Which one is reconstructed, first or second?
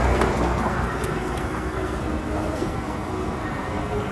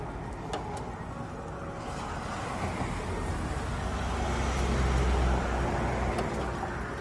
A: first